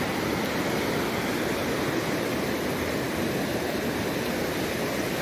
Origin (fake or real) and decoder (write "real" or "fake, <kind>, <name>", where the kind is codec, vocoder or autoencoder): real